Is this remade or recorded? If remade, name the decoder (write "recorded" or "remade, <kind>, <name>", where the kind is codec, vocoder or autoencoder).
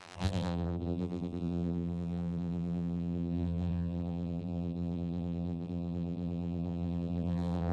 remade, vocoder, BigVGAN v2